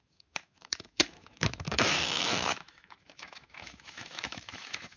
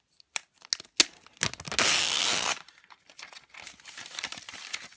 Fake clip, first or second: first